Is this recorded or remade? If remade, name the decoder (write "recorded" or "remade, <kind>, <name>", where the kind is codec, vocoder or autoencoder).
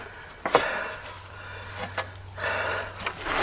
recorded